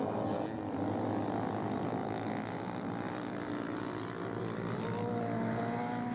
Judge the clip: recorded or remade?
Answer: recorded